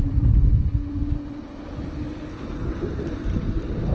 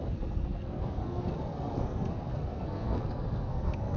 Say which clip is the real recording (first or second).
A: first